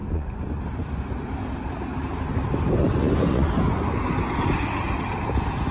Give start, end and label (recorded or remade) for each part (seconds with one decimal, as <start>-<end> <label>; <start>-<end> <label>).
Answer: 0.0-0.6 remade; 0.6-2.8 recorded; 2.8-3.5 remade; 3.5-5.7 recorded